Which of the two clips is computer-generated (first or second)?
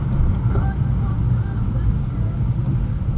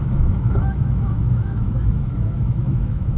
second